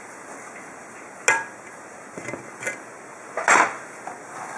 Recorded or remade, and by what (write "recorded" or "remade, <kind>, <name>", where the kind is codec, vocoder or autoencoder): recorded